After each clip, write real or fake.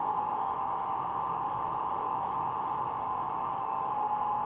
fake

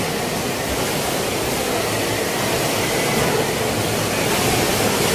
real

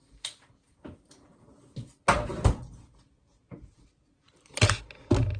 real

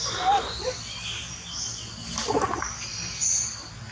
real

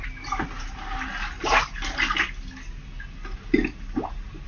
real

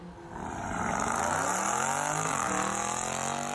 real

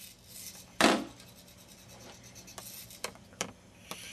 real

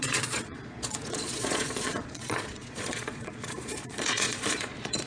fake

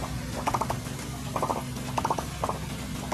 real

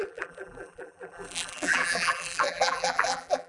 fake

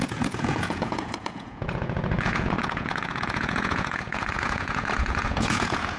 fake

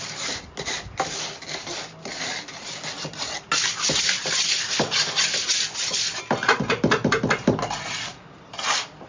real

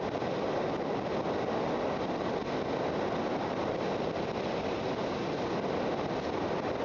real